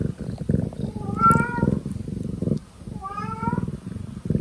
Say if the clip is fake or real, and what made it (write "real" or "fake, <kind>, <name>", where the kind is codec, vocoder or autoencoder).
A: real